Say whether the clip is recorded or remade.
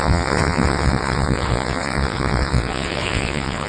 remade